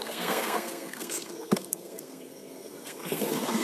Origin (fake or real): fake